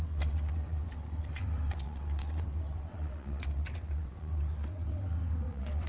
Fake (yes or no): yes